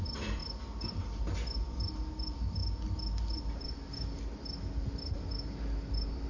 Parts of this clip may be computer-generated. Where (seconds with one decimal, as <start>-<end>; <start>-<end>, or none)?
none